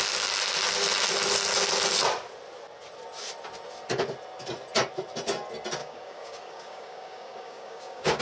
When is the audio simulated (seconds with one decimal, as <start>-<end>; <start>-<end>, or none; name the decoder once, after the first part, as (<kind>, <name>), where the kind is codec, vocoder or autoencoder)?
5.8-8.2 (codec, DAC)